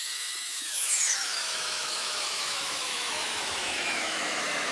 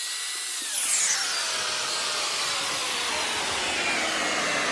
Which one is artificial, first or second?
first